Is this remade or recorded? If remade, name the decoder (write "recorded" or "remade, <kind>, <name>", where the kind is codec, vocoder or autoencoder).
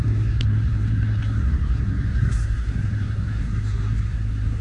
remade, codec, SNAC